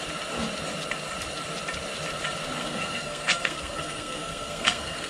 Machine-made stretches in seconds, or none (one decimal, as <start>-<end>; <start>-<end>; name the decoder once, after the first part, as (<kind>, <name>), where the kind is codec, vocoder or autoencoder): 2.6-5.1 (codec, SNAC)